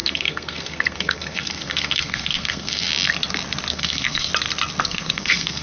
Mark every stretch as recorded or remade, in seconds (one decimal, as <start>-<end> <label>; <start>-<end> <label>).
0.0-2.9 remade; 2.9-3.7 recorded; 3.7-4.3 remade; 4.3-4.8 recorded; 4.8-5.6 remade